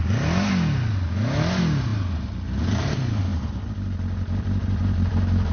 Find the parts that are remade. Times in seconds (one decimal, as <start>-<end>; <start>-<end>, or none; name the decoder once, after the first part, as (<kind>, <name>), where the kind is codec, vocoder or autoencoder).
none